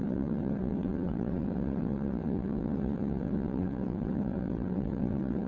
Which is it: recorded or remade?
remade